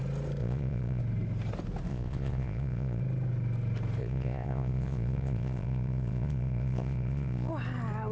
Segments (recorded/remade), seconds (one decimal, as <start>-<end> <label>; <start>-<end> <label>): 0.0-0.4 recorded; 0.4-1.0 remade; 1.0-1.9 recorded; 1.9-3.0 remade; 3.0-4.0 recorded; 4.0-7.5 remade; 7.5-8.1 recorded